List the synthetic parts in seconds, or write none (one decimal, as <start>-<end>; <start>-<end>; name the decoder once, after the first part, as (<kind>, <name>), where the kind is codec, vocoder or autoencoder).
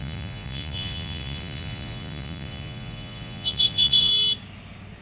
0.0-4.1 (vocoder, Vocos)